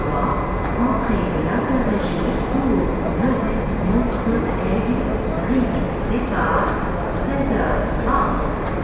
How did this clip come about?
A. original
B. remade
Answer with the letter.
A